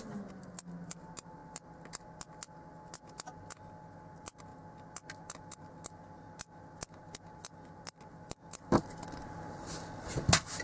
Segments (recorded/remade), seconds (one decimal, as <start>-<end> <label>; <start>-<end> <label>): 0.0-10.6 recorded